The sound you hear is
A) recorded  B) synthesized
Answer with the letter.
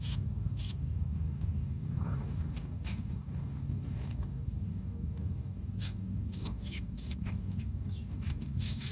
B